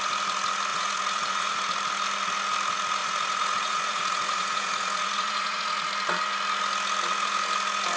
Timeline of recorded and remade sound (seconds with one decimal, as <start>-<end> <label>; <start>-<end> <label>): 0.0-0.7 recorded; 0.7-1.6 remade; 1.6-3.0 recorded; 3.0-5.9 remade; 5.9-8.0 recorded